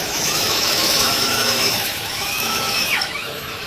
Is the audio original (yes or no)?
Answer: no